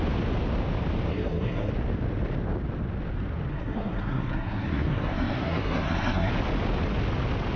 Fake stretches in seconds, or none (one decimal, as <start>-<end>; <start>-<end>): 1.1-1.7; 3.5-6.3